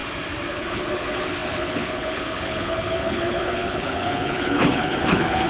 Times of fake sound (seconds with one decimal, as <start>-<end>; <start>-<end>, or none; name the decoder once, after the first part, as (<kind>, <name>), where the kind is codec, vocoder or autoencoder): 0.5-5.5 (codec, HILCodec)